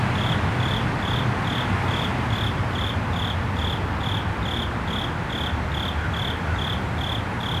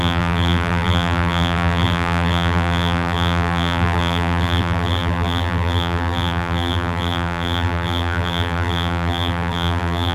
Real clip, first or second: first